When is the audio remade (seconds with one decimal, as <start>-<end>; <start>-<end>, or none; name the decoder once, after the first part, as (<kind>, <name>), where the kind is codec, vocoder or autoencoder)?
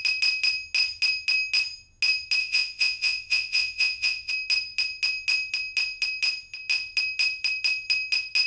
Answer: 2.4-4.3 (vocoder, Vocos)